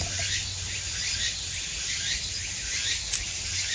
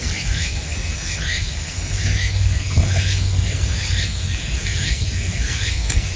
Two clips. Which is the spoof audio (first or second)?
second